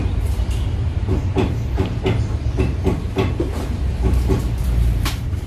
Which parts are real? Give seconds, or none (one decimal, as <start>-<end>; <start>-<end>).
none